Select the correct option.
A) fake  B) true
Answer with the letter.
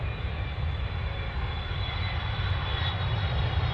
B